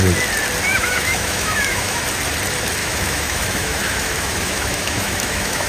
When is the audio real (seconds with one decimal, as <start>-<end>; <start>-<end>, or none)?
0.0-0.7; 2.0-2.8